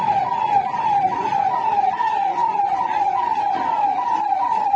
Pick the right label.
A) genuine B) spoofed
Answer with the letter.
B